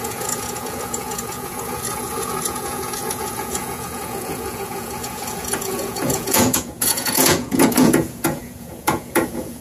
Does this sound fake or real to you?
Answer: fake